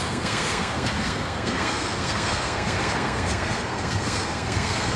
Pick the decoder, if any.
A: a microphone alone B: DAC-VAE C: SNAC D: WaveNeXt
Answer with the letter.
C